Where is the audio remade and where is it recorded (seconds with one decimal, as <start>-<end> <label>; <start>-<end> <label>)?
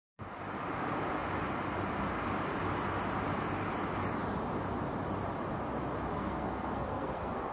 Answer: 0.0-6.1 recorded; 6.1-7.5 remade